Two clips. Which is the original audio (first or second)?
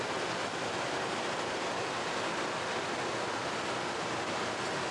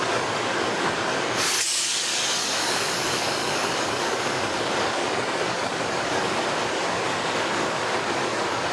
first